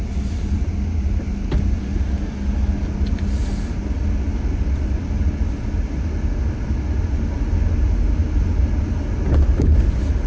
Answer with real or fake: real